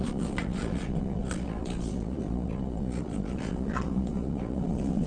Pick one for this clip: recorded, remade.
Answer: remade